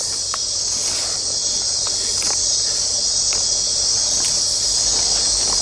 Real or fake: real